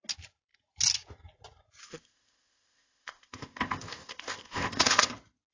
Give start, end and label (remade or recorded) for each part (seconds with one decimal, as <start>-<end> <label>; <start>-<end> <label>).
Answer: 0.0-1.8 recorded; 1.8-5.1 remade; 5.1-5.5 recorded